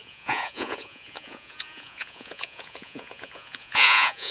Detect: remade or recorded remade